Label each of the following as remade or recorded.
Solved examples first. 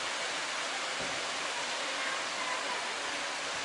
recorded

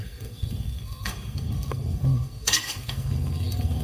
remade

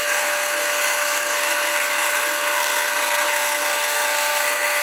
remade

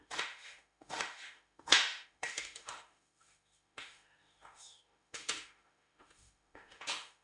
remade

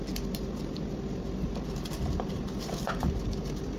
recorded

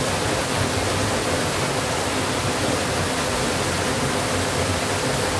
recorded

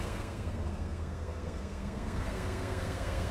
remade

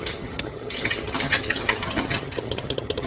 remade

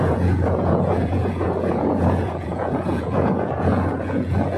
remade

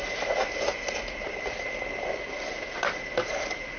recorded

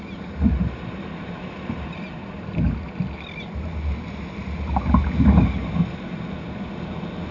recorded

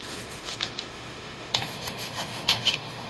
remade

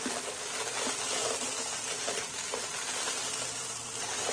recorded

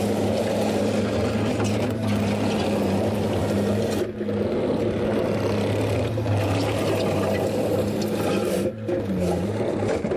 recorded